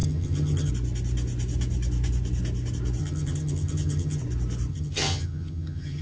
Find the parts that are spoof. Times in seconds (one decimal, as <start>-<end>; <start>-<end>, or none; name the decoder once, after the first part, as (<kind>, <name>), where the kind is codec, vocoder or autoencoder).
0.0-0.7 (vocoder, HiFi-GAN); 3.0-4.2; 4.7-6.0